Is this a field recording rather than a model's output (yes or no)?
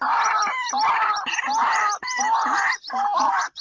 yes